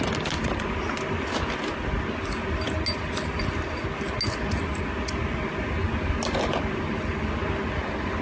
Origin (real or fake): real